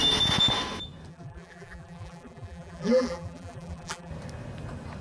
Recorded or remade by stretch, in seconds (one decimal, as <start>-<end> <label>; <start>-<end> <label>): 0.0-1.1 recorded; 1.1-4.1 remade; 4.1-5.0 recorded